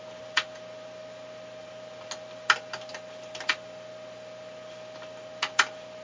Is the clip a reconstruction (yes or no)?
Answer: no